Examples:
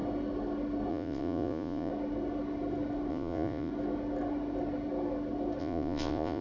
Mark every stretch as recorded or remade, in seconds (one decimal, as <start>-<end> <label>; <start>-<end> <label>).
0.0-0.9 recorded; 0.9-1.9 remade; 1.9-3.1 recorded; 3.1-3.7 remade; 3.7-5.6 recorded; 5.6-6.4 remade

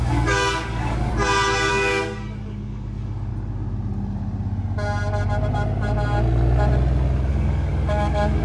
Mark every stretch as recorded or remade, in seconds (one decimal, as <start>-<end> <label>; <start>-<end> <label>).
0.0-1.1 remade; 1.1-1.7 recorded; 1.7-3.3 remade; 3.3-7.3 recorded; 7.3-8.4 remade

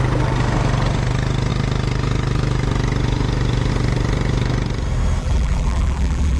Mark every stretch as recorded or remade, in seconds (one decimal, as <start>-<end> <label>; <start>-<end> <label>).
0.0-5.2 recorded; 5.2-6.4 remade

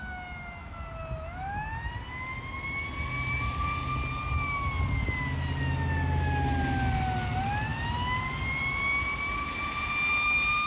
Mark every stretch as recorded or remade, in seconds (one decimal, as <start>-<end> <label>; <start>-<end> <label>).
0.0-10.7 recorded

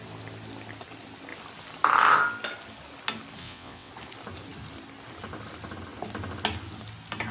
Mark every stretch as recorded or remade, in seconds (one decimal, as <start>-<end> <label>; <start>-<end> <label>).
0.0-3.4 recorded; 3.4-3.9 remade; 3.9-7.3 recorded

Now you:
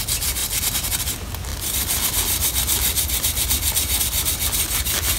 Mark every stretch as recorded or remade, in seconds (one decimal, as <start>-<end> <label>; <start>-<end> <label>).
0.0-5.2 recorded

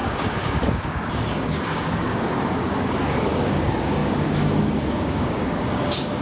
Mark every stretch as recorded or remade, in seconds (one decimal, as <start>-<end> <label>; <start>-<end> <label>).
0.0-6.2 remade

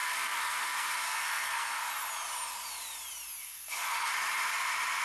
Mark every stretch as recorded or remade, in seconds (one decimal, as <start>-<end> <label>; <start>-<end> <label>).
0.0-1.9 remade; 1.9-3.4 recorded; 3.4-4.1 remade; 4.1-5.0 recorded